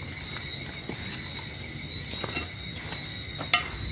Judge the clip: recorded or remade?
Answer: recorded